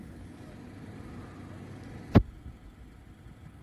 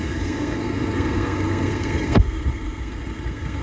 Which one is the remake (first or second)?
second